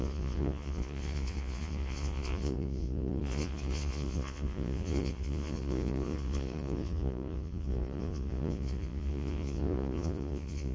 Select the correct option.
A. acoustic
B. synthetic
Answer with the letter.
B